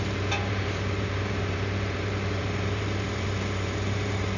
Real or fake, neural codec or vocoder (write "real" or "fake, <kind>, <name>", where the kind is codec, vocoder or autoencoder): fake, vocoder, BigVGAN v2